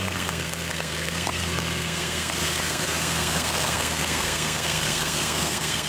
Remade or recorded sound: remade